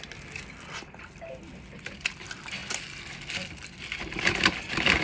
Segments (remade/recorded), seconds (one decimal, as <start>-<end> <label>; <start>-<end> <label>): 0.0-5.0 recorded